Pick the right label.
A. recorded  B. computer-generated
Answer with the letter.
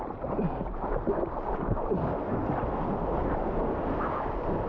A